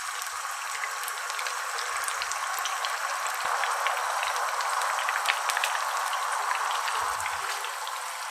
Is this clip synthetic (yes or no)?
no